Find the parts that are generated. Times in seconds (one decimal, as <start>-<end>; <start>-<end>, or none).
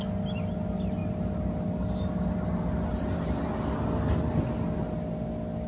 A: none